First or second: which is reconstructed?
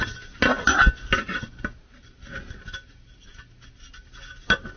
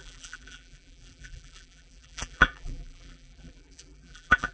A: second